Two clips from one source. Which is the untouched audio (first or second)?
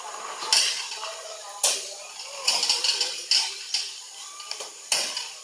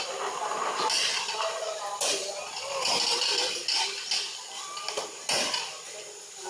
second